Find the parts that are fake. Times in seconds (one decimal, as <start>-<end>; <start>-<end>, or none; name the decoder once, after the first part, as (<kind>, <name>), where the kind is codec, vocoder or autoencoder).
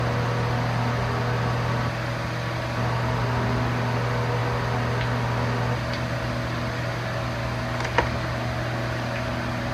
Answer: none